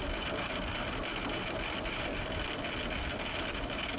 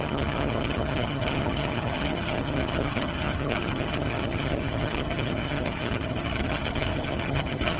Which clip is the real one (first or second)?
first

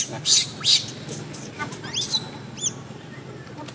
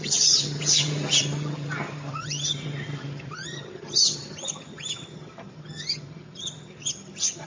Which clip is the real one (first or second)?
first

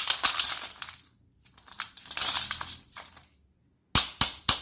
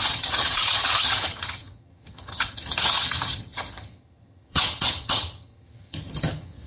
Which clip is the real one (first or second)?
first